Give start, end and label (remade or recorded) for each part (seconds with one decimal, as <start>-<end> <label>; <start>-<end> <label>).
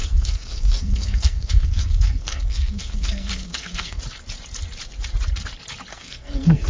0.0-4.0 remade; 4.0-5.9 recorded; 5.9-6.7 remade